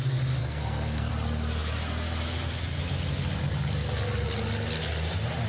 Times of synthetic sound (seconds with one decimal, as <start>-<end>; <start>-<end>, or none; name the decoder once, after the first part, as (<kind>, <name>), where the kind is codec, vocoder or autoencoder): 0.4-1.1 (codec, SNAC)